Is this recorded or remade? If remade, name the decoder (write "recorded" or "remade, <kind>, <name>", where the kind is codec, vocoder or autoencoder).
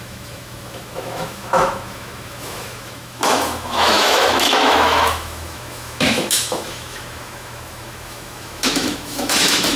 remade, autoencoder, DAC-VAE